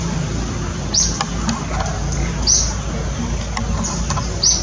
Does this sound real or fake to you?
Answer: real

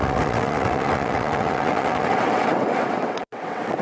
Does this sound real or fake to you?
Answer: fake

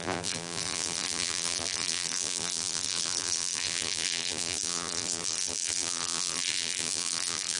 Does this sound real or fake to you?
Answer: fake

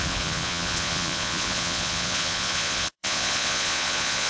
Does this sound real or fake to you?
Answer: fake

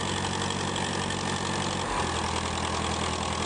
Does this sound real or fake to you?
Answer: real